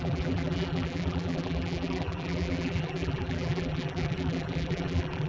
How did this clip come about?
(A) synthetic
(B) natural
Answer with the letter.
A